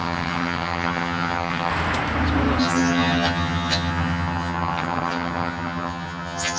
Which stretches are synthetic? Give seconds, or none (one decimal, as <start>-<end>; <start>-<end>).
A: 0.0-1.7; 2.6-6.6